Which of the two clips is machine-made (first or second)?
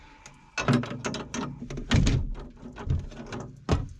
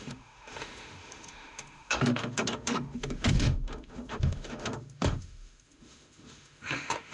second